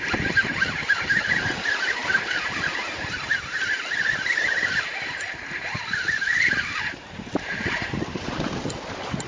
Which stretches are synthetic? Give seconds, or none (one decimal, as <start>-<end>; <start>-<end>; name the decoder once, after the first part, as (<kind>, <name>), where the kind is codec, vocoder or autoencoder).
0.0-9.3 (vocoder, BigVGAN v2)